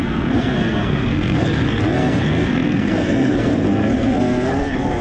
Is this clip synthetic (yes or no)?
yes